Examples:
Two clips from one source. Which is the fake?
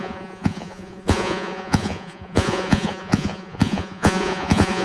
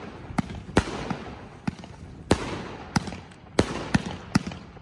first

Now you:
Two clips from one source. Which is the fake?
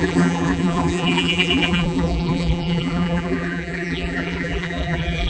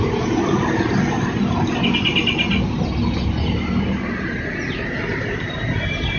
first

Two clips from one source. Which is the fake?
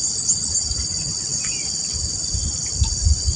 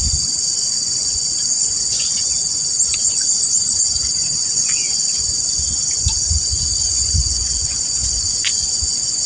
second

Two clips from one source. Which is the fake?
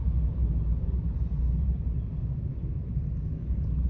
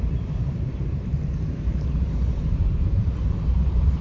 second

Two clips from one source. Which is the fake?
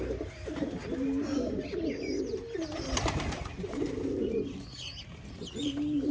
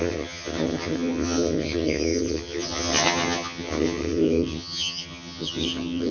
second